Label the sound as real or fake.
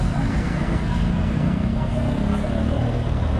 fake